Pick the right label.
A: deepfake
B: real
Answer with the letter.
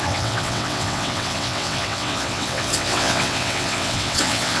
A